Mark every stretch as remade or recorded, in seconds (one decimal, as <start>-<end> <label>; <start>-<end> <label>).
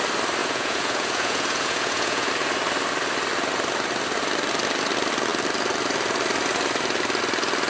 0.0-0.4 recorded; 0.4-2.3 remade; 2.3-7.7 recorded